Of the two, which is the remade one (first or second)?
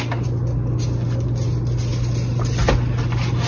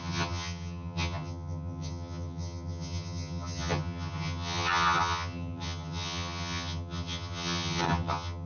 second